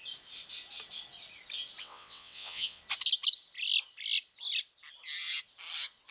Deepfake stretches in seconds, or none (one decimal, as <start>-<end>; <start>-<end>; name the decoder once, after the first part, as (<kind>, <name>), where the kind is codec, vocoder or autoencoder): 1.8-2.8 (vocoder, WaveNeXt)